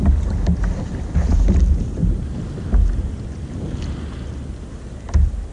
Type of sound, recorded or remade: recorded